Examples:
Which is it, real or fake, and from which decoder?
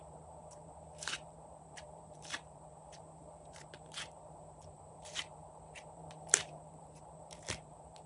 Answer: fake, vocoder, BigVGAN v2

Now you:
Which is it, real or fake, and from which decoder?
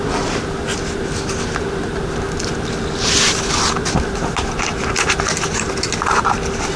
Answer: real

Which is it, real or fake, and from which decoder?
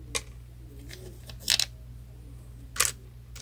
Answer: real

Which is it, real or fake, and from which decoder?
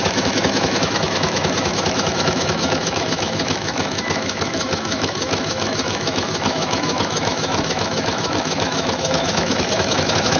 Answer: fake, autoencoder, DAC-VAE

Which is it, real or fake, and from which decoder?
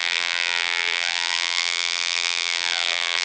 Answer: fake, vocoder, BigVGAN v2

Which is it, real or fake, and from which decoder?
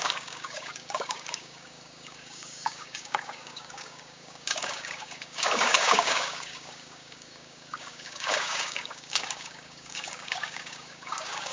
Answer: fake, codec, DAC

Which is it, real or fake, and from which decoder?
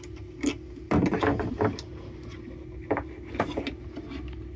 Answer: real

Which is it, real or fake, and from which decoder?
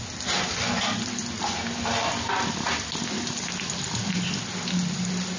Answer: real